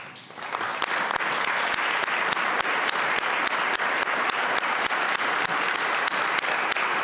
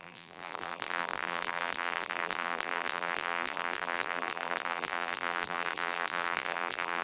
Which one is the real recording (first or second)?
first